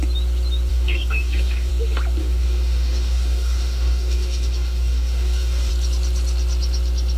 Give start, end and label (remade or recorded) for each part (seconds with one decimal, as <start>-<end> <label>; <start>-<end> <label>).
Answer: 0.0-0.7 recorded; 0.7-1.7 remade; 1.7-2.2 recorded; 2.2-5.7 remade; 5.7-7.2 recorded